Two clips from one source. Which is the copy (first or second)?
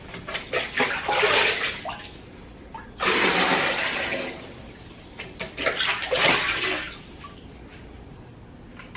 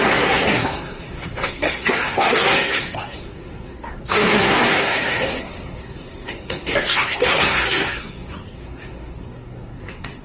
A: second